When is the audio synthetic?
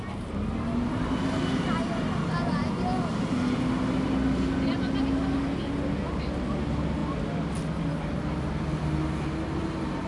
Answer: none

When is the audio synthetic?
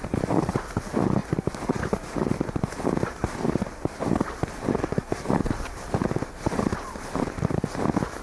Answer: 0.0-8.2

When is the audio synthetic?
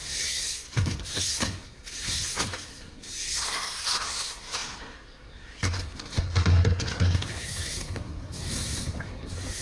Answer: 0.0-9.6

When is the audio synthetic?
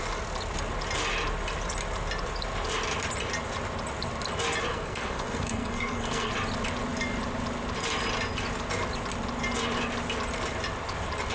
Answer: 4.7-6.3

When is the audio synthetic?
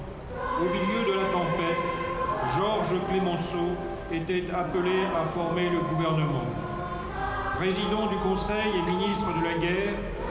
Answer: none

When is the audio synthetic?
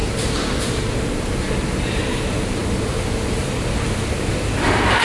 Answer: 0.0-2.6; 4.1-5.0